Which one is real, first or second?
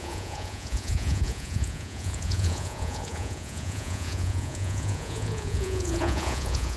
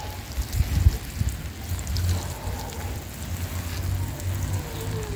second